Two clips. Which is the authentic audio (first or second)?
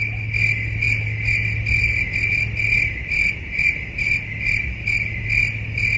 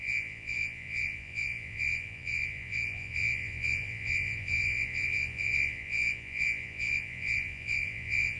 first